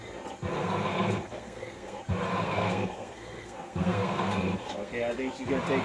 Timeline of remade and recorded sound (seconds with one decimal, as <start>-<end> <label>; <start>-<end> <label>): 0.0-0.5 recorded; 0.5-2.0 remade; 2.0-2.4 recorded; 2.4-4.9 remade; 4.9-5.8 recorded

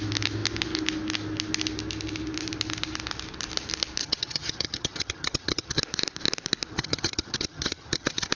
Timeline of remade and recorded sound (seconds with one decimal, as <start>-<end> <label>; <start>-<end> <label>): 0.0-4.0 recorded; 4.0-5.8 remade; 5.8-6.7 recorded; 6.7-8.3 remade

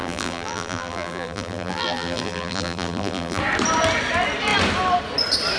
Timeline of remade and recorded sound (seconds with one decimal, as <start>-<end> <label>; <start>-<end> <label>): 0.0-3.4 remade; 3.4-5.6 recorded

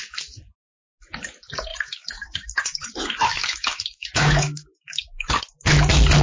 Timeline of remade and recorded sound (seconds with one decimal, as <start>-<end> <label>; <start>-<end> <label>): 0.0-1.7 recorded; 1.7-5.4 remade; 5.4-6.2 recorded

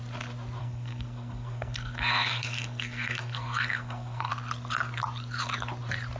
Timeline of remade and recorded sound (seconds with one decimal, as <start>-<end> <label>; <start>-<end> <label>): 0.0-0.6 recorded; 0.6-4.3 remade; 4.3-6.2 recorded

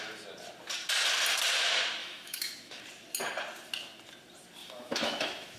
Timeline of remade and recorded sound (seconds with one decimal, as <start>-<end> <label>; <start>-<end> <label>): 0.0-2.0 recorded; 2.0-2.8 remade; 2.8-4.6 recorded; 4.6-5.6 remade

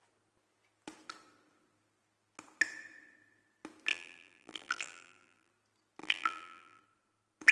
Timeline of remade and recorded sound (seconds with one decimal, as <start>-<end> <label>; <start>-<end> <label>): 0.0-3.9 recorded; 3.9-5.5 remade; 5.5-6.0 recorded; 6.0-6.8 remade; 6.8-7.5 recorded